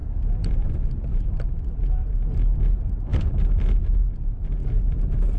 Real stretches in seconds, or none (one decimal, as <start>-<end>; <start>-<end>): 1.7-5.4

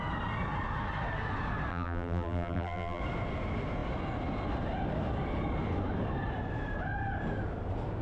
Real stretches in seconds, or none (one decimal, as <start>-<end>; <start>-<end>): 0.0-1.7; 3.0-8.0